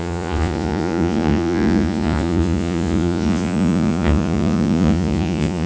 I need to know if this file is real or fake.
fake